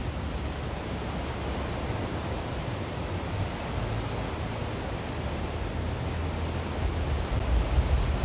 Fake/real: real